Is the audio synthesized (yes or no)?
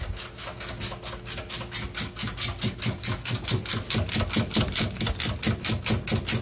no